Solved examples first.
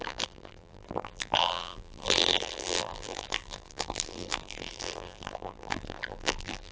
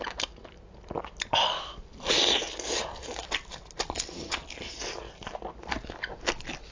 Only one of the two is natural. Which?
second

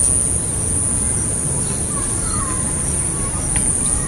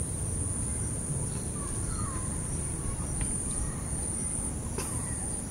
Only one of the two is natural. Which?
first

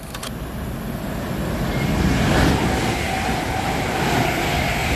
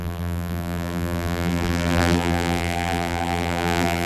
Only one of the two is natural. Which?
first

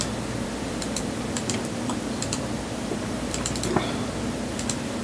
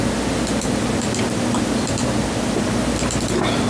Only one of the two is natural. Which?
second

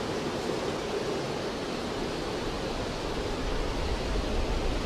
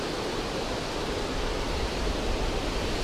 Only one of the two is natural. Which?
first